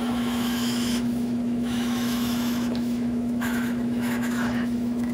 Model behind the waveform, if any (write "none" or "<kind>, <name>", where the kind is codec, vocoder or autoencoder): autoencoder, DAC-VAE